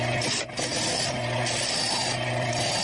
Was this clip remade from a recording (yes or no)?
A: no